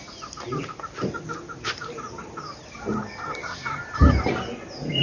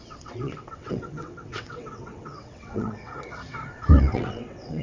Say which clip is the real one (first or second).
first